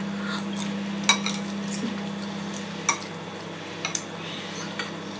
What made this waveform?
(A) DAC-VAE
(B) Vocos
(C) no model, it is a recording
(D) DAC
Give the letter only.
C